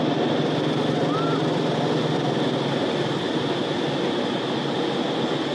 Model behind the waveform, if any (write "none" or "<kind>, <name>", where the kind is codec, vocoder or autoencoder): none